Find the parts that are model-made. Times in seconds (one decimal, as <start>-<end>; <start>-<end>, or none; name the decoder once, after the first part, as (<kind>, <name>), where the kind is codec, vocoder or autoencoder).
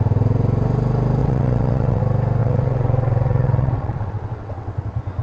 1.2-2.0 (vocoder, WaveNeXt); 2.4-4.8